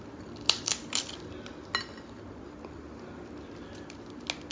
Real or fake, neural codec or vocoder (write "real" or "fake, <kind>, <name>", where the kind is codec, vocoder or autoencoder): real